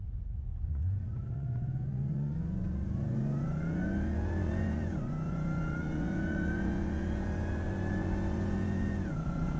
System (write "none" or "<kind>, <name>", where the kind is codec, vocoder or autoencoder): vocoder, Vocos